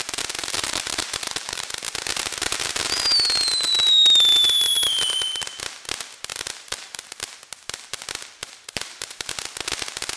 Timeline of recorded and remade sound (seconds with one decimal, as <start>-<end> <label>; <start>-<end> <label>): 0.0-0.4 recorded; 0.4-1.8 remade; 1.8-6.3 recorded; 6.3-7.2 remade; 7.2-8.4 recorded; 8.4-9.3 remade; 9.3-10.2 recorded